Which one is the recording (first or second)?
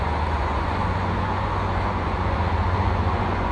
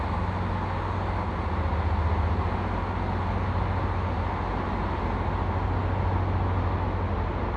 second